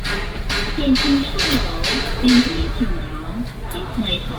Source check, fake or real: fake